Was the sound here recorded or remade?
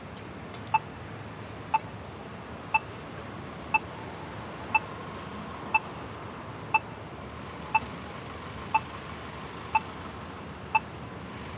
recorded